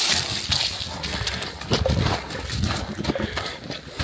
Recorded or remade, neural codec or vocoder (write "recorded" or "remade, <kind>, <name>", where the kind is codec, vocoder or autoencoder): recorded